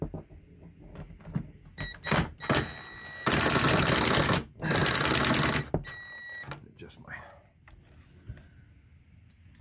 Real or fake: real